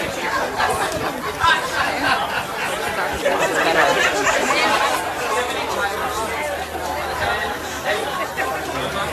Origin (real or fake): real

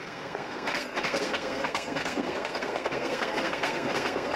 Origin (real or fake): fake